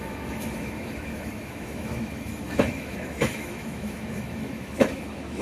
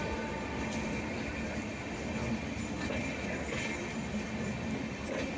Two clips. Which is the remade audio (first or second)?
first